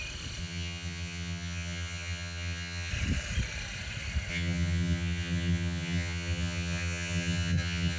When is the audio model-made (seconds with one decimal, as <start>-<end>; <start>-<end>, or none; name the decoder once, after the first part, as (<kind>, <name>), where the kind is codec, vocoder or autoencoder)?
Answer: 0.4-2.9 (vocoder, HiFi-GAN); 4.3-8.0